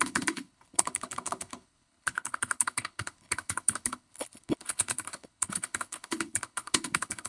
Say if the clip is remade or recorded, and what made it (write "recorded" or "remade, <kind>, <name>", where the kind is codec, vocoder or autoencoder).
remade, codec, HILCodec